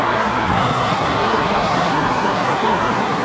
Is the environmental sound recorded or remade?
remade